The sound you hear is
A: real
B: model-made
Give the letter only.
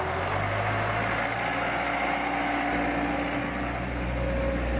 A